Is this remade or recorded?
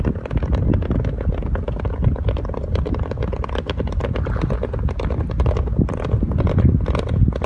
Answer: recorded